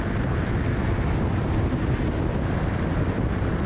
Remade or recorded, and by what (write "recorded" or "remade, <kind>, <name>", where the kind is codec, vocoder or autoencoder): recorded